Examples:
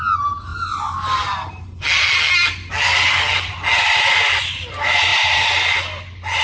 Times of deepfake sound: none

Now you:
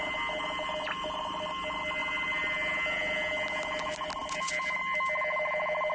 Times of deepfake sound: none